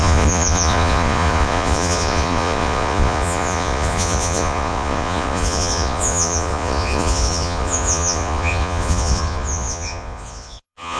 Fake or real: fake